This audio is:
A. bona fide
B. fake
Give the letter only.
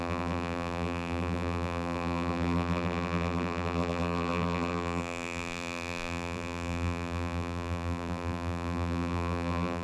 B